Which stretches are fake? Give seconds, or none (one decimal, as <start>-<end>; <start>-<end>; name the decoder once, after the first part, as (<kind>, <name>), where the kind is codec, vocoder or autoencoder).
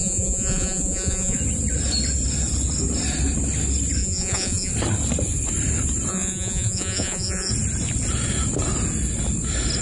0.0-1.4 (vocoder, Vocos); 4.0-4.7; 6.1-7.5